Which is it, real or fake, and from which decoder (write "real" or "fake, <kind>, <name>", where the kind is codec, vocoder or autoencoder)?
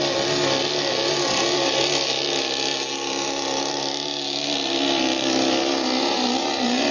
real